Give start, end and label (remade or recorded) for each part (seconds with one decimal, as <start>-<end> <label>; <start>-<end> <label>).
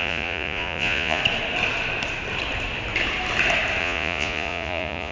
0.0-1.2 remade; 1.2-3.8 recorded; 3.8-5.1 remade